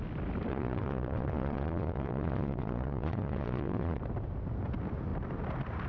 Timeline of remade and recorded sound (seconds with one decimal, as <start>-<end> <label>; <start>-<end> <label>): 0.0-0.5 recorded; 0.5-4.0 remade; 4.0-5.9 recorded